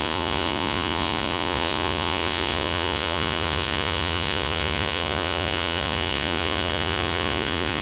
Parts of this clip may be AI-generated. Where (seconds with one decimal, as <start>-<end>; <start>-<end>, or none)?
0.0-7.8